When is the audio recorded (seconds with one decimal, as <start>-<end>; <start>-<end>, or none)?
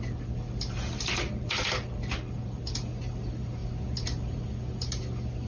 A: 0.0-5.5